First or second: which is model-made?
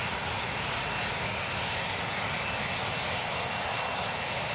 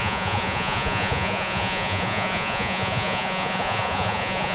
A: second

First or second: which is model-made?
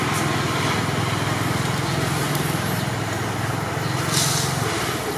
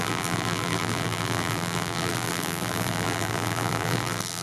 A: second